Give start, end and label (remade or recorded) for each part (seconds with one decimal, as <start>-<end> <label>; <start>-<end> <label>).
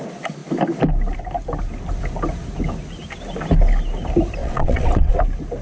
0.0-4.4 recorded; 4.4-5.1 remade; 5.1-5.6 recorded